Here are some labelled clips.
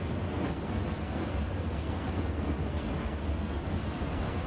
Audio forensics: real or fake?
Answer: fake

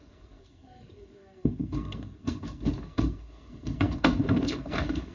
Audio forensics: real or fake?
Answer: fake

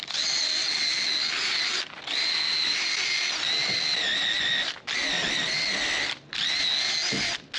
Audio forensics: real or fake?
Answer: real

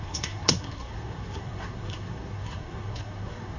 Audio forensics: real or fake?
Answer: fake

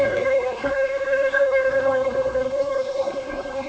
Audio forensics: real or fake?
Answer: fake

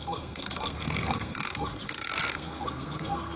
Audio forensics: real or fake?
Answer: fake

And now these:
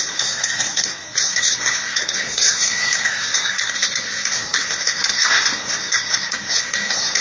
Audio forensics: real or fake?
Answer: fake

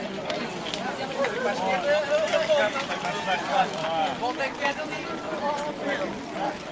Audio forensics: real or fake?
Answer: real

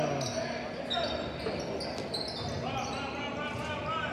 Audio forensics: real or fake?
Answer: real